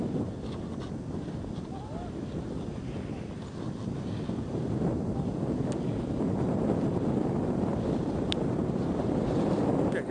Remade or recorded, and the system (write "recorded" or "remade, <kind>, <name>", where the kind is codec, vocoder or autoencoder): recorded